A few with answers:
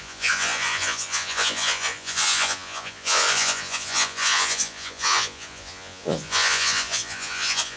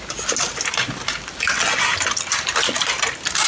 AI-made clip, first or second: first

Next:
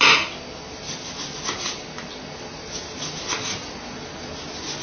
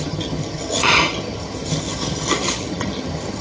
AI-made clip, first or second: second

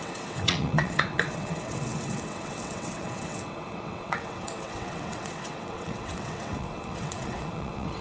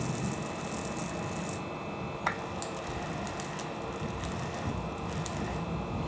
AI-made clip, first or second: first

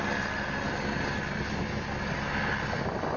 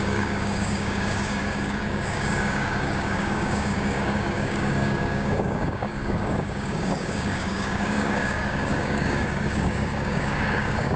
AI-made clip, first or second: second